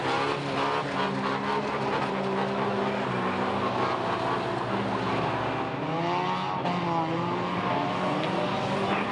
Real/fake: real